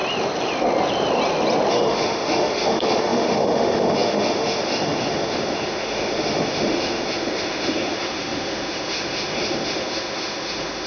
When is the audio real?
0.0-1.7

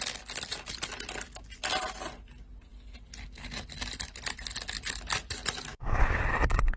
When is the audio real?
0.0-5.7; 6.2-6.8

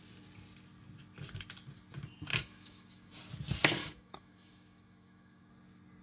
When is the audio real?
0.0-2.3; 3.2-3.8; 5.5-6.0

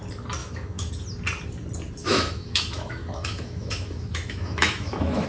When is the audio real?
0.0-0.4; 0.9-2.0

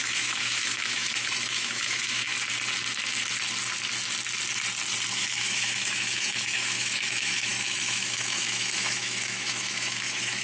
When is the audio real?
2.3-5.1